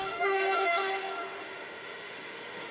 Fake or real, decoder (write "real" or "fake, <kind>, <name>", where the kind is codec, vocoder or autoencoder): fake, autoencoder, DAC-VAE